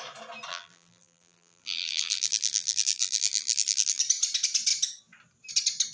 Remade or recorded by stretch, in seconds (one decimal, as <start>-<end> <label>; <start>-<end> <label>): 0.0-0.5 recorded; 0.5-4.0 remade; 4.0-5.9 recorded